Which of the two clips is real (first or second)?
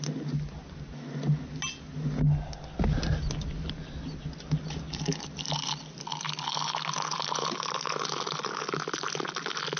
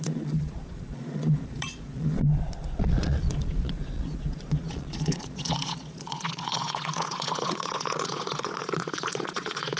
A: first